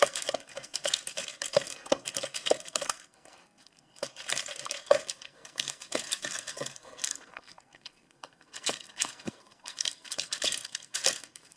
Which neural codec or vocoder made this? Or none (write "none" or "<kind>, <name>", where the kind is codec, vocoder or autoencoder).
codec, SNAC